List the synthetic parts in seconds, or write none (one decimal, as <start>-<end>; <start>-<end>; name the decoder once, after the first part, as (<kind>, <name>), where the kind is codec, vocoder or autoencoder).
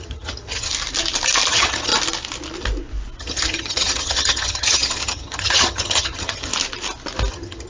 0.0-0.7 (vocoder, HiFi-GAN); 1.5-1.9; 3.2-6.5; 7.3-7.7